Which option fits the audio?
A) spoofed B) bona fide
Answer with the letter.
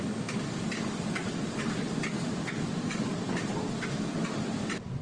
A